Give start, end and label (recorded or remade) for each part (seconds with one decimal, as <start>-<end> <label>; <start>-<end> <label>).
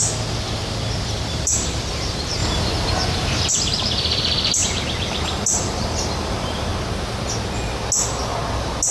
0.0-1.3 recorded; 1.3-2.4 remade; 2.4-3.5 recorded; 3.5-6.7 remade; 6.7-8.9 recorded